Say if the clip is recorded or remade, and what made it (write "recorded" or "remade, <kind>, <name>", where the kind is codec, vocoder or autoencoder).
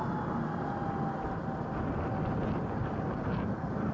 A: recorded